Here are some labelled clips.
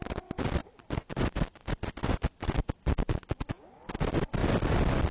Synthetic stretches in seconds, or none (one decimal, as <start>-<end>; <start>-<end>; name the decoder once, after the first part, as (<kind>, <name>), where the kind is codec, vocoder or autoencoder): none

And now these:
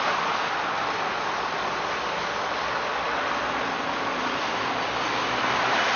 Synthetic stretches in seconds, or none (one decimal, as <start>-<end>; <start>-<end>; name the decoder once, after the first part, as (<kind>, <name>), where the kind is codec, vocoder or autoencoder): none

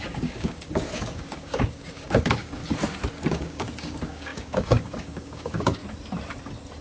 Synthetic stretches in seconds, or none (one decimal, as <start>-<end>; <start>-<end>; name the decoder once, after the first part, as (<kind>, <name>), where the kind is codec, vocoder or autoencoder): 0.0-2.6 (codec, DAC); 3.1-5.8

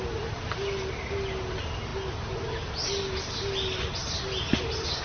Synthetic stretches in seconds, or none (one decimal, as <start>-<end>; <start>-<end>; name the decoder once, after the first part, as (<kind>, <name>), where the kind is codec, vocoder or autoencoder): none

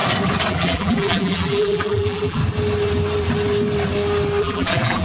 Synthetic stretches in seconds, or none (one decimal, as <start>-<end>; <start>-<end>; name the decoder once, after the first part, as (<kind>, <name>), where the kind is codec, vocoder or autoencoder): 0.5-2.4 (vocoder, BigVGAN v2); 4.4-5.0

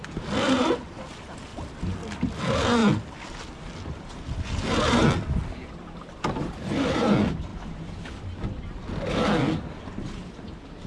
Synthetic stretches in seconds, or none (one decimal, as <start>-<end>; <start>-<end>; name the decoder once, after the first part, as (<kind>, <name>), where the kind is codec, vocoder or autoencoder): 1.5-2.4 (vocoder, BigVGAN v2)

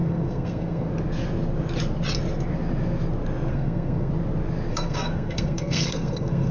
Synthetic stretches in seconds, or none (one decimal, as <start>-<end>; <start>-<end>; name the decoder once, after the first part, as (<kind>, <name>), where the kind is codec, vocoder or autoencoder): 0.0-0.9 (codec, SNAC); 3.5-4.1; 4.7-6.5